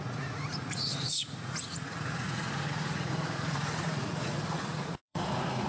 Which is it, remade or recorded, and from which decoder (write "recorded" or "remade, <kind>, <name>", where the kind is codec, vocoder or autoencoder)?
remade, vocoder, Vocos